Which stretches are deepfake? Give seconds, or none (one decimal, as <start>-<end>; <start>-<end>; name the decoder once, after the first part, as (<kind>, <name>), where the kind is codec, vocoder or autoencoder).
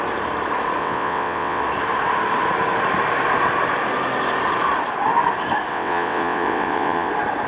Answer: 0.8-1.6 (vocoder, WaveNeXt); 5.7-7.1